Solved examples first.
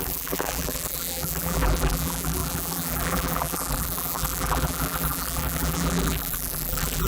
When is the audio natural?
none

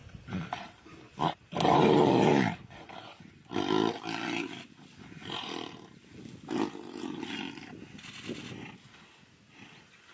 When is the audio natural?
1.8-10.1

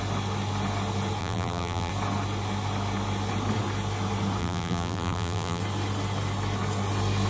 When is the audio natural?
0.0-1.2; 1.9-4.4; 5.6-7.3

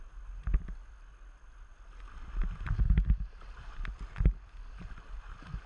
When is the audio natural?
0.0-5.7